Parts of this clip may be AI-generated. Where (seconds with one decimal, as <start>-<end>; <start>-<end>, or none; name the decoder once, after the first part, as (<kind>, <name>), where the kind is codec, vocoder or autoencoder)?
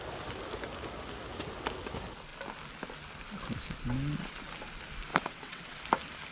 5.1-5.8 (vocoder, WaveNeXt)